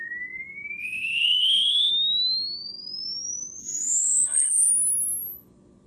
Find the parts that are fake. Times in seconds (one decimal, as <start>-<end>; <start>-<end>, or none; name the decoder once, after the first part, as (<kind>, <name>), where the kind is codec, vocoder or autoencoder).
0.8-1.9 (codec, HILCodec); 3.6-4.7